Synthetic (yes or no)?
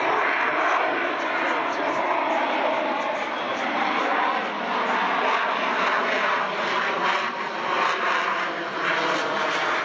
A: no